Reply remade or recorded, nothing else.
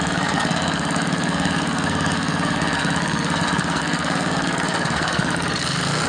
remade